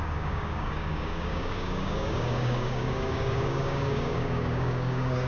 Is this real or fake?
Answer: fake